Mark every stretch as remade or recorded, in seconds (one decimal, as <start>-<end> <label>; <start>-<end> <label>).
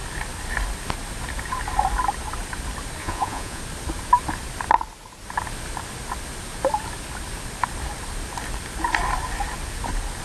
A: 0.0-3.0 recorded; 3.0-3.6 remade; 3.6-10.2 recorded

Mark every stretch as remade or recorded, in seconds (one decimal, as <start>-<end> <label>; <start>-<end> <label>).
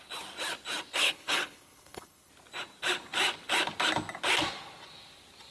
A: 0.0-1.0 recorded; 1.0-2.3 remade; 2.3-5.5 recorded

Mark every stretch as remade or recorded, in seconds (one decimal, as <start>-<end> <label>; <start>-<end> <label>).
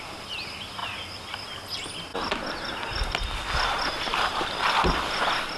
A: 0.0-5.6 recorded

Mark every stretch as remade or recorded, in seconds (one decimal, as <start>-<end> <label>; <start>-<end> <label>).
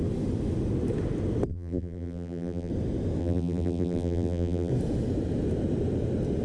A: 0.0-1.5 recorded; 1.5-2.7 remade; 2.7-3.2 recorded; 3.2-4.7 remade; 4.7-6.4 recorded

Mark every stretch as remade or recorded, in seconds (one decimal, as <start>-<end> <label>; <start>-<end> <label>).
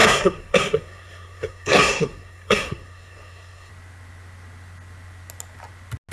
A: 0.0-3.7 remade; 3.7-6.1 recorded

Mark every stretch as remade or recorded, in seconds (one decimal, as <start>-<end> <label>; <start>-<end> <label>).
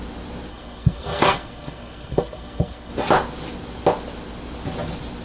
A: 0.0-0.5 recorded; 0.5-2.9 remade; 2.9-5.2 recorded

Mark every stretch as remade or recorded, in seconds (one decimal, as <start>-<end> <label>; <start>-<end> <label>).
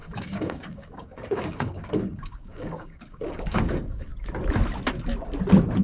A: 0.0-4.1 remade; 4.1-5.8 recorded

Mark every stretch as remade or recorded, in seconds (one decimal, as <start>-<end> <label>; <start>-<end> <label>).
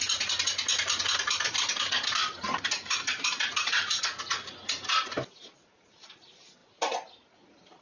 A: 0.0-0.7 recorded; 0.7-4.0 remade; 4.0-7.8 recorded